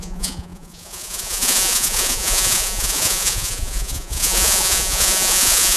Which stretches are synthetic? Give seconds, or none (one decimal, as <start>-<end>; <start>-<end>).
0.0-5.8